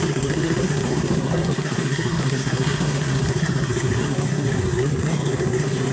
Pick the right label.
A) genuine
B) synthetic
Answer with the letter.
B